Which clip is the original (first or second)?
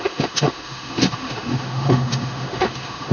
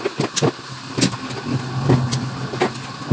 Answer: second